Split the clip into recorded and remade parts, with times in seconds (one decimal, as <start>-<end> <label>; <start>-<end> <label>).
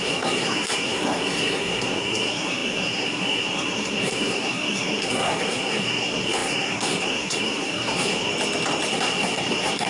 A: 0.0-8.3 remade; 8.3-8.9 recorded; 8.9-9.9 remade